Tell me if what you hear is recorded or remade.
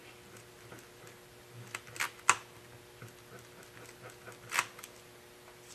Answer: recorded